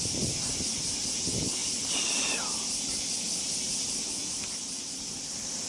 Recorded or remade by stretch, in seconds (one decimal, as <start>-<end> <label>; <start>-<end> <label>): 0.0-5.7 recorded